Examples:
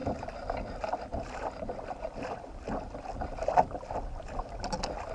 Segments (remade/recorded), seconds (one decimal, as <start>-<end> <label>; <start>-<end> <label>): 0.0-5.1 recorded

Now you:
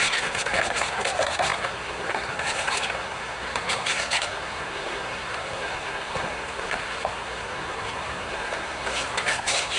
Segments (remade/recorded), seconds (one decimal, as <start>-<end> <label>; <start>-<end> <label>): 0.0-9.8 remade

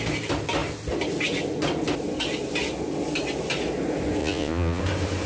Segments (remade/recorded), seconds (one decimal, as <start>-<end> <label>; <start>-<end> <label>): 0.0-4.2 recorded; 4.2-4.8 remade; 4.8-5.3 recorded